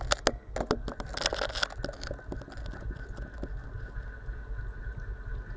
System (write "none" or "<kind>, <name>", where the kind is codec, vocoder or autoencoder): none